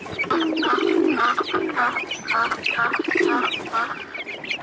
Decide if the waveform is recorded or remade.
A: recorded